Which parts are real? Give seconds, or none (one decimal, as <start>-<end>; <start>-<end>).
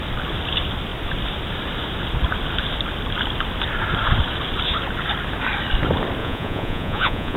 0.0-6.2